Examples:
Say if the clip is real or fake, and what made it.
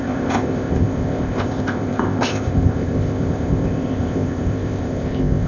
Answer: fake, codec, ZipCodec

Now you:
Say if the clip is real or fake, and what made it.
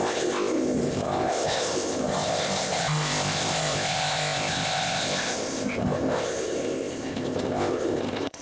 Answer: fake, codec, ZipCodec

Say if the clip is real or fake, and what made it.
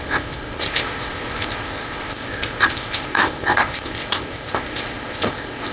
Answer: fake, codec, ZipCodec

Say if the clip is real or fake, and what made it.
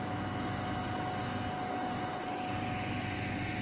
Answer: real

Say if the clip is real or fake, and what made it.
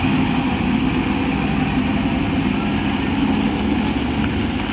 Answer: real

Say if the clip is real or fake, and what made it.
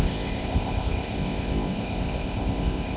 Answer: fake, codec, ZipCodec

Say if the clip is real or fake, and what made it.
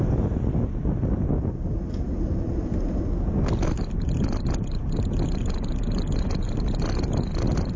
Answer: real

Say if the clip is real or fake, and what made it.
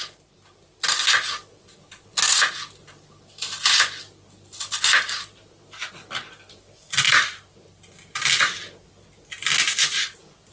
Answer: real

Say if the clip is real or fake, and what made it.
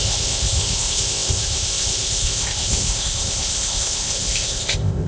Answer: fake, codec, ZipCodec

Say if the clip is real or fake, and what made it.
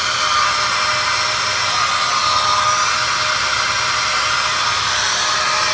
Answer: real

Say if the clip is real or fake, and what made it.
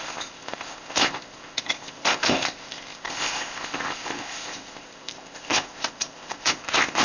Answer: fake, codec, ZipCodec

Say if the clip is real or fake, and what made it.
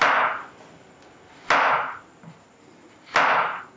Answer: real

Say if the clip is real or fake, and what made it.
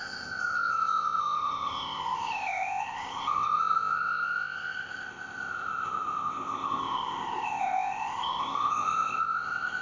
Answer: fake, codec, ZipCodec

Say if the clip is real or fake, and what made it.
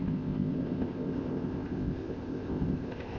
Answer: fake, codec, ZipCodec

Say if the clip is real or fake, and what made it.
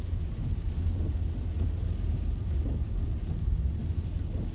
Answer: real